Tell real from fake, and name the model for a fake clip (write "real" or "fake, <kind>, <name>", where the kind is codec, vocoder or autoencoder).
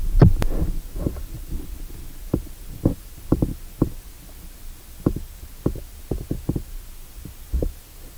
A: real